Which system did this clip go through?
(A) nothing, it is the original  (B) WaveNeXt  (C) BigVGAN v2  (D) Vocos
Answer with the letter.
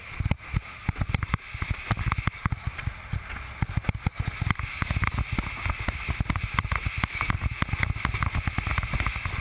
A